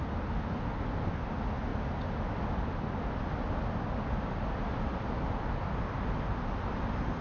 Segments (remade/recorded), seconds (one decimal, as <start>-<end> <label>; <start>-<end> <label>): 0.0-7.2 recorded